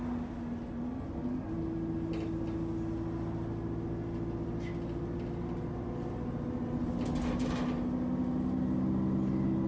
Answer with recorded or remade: recorded